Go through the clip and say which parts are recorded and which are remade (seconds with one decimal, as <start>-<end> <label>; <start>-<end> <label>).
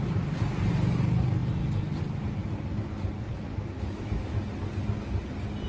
0.0-3.3 recorded; 3.3-4.4 remade; 4.4-5.7 recorded